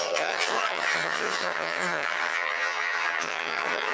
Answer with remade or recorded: remade